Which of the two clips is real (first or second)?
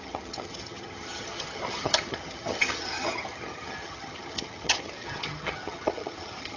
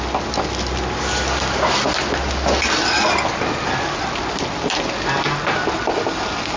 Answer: second